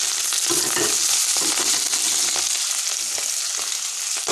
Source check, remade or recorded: recorded